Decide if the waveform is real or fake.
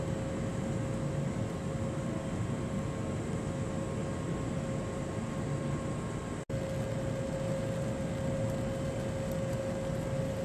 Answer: real